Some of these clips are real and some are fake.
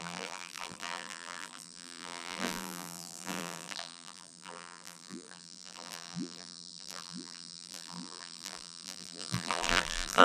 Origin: fake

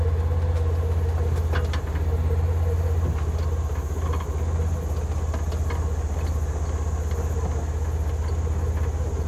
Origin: real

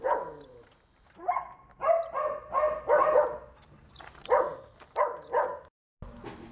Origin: real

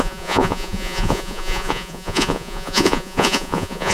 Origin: fake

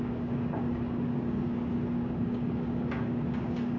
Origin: fake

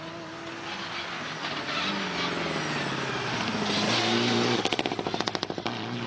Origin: real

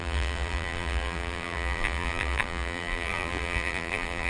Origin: fake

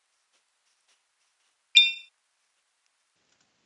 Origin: real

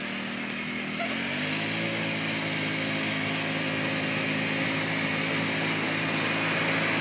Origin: real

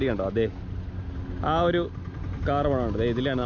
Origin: real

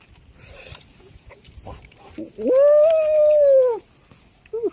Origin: real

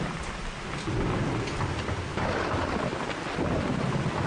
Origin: real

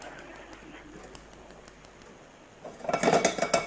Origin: real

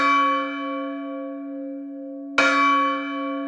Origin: real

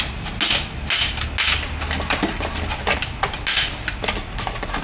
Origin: real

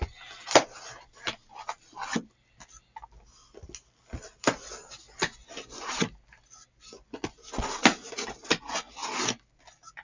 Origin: real